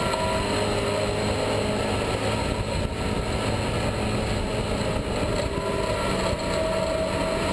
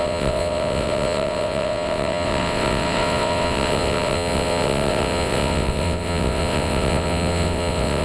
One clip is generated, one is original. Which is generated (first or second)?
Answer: second